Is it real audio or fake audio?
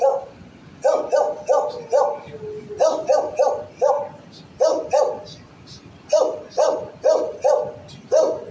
real